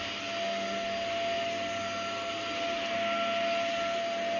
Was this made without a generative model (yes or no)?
yes